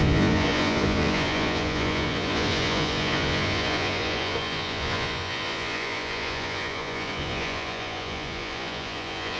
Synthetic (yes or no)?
yes